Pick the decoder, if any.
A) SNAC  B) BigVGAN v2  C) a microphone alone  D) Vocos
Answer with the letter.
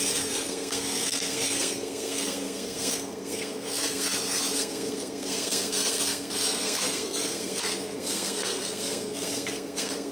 A